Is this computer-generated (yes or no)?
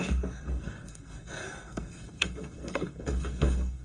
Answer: yes